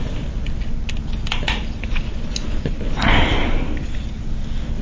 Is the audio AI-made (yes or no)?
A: no